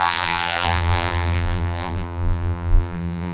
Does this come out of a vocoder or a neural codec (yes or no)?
yes